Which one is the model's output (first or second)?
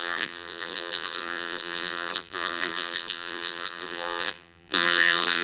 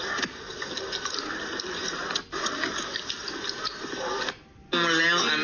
first